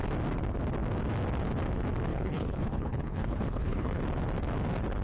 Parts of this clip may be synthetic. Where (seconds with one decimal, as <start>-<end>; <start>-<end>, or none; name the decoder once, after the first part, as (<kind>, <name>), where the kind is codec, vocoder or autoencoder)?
2.1-4.0 (codec, HILCodec)